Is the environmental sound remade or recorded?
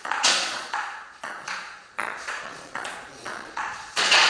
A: remade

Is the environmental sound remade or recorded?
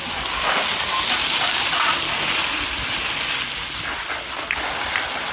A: recorded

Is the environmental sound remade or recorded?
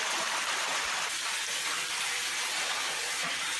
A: recorded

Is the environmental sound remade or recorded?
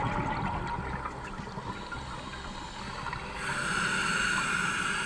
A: recorded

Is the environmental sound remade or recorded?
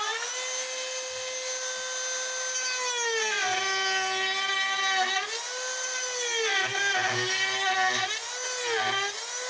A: recorded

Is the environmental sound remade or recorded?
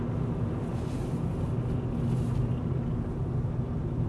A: recorded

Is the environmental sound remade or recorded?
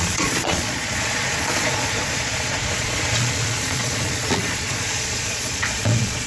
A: remade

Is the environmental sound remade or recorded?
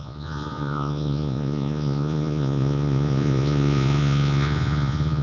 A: remade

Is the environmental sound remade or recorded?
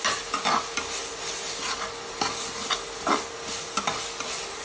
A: recorded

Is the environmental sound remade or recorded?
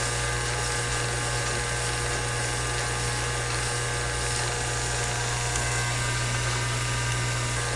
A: recorded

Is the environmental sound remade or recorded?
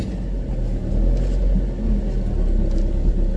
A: recorded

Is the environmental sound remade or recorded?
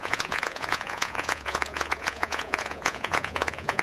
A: remade